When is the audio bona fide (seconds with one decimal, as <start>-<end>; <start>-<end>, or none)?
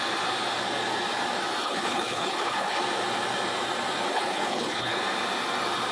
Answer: 0.0-1.6; 2.8-4.1; 5.0-5.9